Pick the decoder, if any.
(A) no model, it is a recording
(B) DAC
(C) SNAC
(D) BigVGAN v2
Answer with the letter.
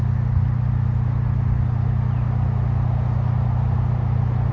A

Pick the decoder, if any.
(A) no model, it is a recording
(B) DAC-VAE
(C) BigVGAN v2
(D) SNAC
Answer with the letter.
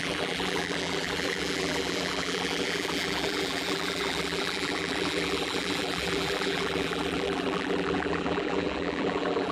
C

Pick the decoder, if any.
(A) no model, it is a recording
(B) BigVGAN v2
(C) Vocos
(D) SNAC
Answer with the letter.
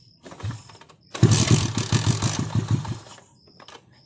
B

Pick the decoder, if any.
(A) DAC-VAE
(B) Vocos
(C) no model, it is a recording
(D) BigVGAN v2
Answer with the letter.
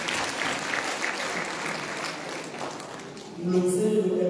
C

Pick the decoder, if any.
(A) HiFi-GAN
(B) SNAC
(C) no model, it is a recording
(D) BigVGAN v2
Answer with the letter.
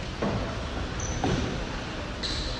C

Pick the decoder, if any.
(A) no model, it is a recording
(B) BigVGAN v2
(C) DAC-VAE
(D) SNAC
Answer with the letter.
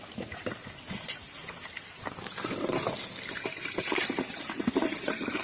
B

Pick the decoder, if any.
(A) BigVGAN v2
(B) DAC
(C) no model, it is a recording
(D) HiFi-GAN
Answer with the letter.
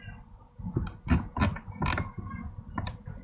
C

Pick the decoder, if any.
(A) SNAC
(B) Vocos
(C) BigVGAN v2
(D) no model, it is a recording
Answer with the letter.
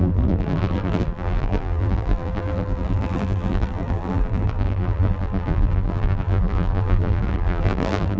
C